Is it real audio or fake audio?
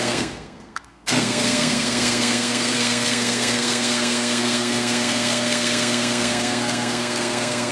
fake